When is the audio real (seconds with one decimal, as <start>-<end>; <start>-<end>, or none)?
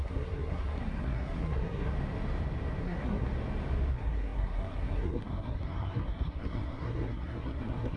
1.9-2.8; 3.3-3.9